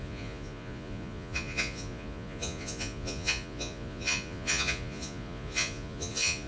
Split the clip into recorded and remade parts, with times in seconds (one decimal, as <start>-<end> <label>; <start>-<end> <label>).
0.0-6.5 remade